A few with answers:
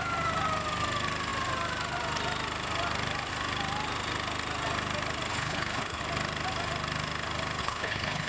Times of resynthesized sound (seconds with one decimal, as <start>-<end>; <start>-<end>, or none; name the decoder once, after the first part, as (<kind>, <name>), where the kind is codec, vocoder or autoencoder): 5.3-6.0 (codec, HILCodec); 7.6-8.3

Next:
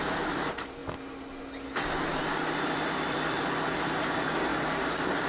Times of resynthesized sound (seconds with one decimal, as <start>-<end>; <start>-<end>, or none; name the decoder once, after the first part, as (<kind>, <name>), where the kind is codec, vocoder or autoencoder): none

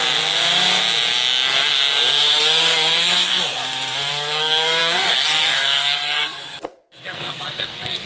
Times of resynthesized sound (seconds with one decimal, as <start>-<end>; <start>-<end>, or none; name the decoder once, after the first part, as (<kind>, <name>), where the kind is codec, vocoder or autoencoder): 2.4-3.6 (codec, SNAC); 4.1-8.1

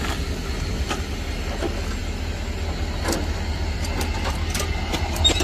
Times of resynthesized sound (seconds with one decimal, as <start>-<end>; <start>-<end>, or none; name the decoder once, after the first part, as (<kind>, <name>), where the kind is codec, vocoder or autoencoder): none

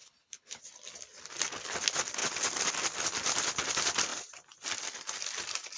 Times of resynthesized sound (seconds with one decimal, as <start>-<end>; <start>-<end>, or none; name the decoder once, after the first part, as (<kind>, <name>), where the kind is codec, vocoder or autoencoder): 0.0-0.6 (codec, HILCodec)

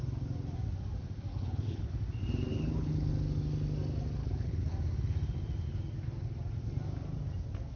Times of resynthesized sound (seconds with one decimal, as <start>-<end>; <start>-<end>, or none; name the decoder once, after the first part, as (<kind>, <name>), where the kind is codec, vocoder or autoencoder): 1.3-1.9 (codec, HILCodec); 2.5-3.1; 4.2-4.7